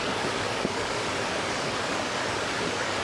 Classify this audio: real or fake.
fake